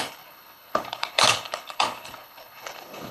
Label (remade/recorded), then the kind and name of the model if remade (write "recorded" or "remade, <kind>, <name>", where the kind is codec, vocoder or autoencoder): remade, codec, HILCodec